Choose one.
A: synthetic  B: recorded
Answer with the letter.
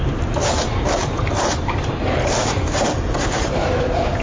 A